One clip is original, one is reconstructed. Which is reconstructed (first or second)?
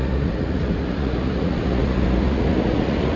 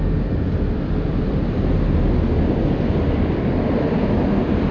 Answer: first